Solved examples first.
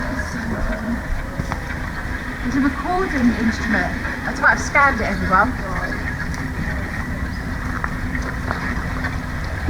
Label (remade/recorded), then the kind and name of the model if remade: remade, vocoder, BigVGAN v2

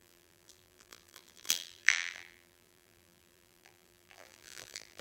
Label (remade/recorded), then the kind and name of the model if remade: remade, vocoder, BigVGAN v2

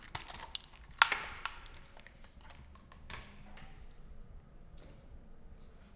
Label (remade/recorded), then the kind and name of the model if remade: recorded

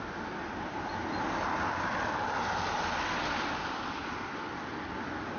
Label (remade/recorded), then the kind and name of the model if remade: recorded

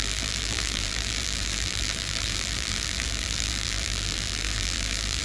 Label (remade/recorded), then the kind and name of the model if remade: remade, vocoder, BigVGAN v2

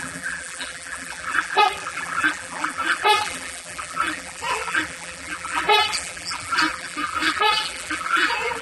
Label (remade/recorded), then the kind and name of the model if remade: remade, vocoder, BigVGAN v2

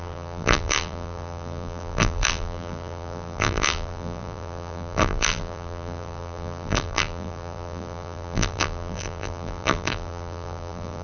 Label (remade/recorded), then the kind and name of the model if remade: remade, vocoder, BigVGAN v2